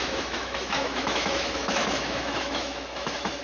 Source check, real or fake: fake